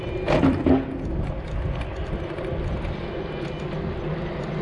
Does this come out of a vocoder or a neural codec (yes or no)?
no